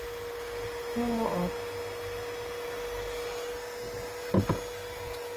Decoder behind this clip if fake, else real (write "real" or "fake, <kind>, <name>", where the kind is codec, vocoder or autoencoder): real